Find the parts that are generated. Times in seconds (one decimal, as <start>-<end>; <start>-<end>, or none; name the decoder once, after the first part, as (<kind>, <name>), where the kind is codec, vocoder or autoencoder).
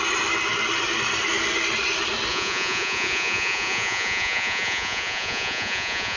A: 2.3-6.2 (vocoder, Vocos)